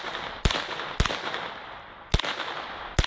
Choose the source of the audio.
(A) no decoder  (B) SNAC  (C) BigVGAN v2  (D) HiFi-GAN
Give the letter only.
A